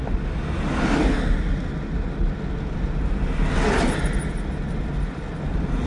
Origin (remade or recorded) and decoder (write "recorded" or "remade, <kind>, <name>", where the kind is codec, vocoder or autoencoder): recorded